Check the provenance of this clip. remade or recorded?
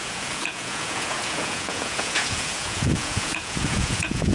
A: remade